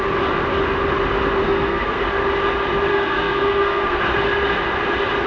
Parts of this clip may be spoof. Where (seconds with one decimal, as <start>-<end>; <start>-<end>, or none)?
1.4-2.0; 2.9-4.0